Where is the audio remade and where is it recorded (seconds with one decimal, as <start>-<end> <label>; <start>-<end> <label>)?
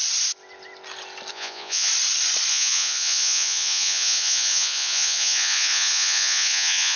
0.0-1.3 recorded; 1.3-1.9 remade; 1.9-2.5 recorded; 2.5-7.0 remade